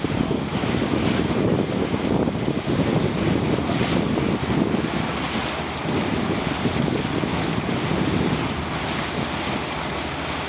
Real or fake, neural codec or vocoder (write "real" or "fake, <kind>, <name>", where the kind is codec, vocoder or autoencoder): real